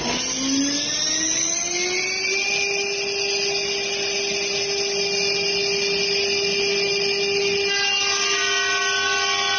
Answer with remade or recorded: recorded